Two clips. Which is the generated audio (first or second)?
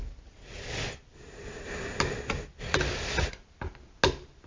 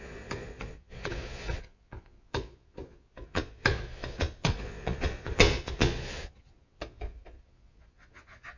second